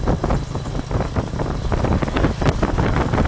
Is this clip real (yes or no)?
yes